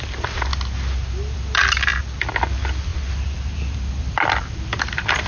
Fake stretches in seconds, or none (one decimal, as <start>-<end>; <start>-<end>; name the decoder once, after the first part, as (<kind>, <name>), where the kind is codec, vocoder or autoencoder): 0.0-0.5 (vocoder, BigVGAN v2); 1.1-1.9; 2.4-5.3